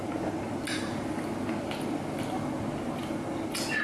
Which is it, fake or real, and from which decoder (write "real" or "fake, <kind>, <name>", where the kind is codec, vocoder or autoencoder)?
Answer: real